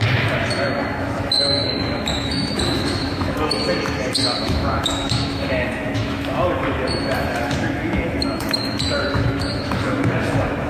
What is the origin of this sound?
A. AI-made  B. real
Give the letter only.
A